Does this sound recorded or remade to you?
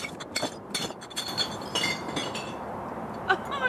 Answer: recorded